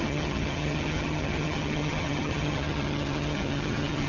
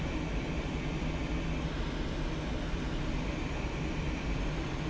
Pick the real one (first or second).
second